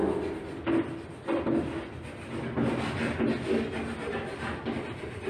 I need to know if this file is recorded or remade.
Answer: recorded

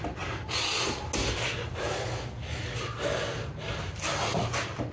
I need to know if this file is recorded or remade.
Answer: recorded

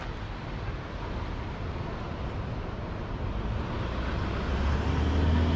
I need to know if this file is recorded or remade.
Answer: recorded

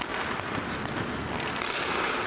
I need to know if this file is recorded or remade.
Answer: recorded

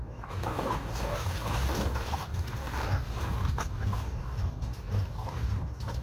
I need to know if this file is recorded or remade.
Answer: remade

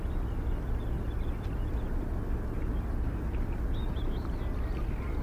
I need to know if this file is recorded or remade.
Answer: recorded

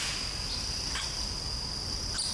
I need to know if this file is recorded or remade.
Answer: recorded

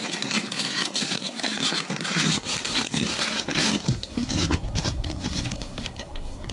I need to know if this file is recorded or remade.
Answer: remade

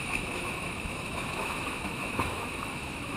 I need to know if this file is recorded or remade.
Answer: remade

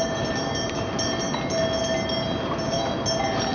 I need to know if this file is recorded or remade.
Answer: recorded